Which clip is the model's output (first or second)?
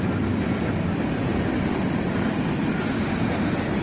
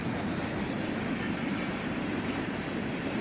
second